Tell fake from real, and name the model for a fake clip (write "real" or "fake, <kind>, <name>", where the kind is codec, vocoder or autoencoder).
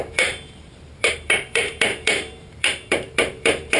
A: fake, vocoder, BigVGAN v2